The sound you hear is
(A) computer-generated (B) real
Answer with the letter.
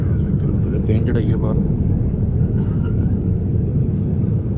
A